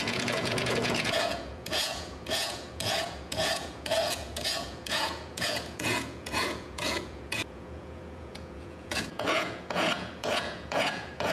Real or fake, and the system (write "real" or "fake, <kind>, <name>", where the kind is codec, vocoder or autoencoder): fake, vocoder, Vocos